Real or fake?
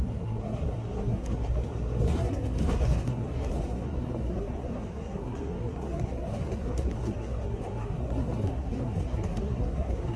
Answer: fake